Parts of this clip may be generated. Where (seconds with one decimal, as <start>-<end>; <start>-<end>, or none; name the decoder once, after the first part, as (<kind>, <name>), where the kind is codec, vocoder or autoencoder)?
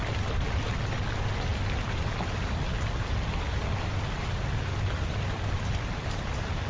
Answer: none